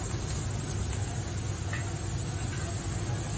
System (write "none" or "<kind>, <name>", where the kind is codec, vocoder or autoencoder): none